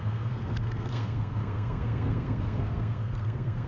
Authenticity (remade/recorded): remade